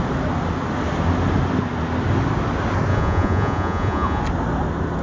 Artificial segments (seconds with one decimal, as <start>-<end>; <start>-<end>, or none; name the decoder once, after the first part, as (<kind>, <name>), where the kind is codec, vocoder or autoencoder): 2.9-4.2 (vocoder, Vocos)